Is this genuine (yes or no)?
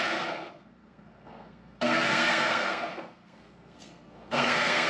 no